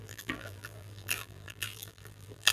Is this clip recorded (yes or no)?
no